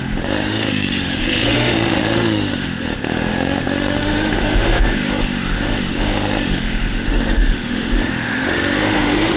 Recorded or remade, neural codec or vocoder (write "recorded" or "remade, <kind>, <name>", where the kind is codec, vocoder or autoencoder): remade, autoencoder, DAC-VAE